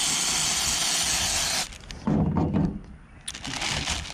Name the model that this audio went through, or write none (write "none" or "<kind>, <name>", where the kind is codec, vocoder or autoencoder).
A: none